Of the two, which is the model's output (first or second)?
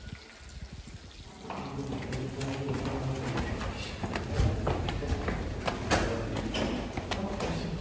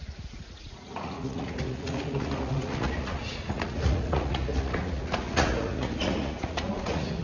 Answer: second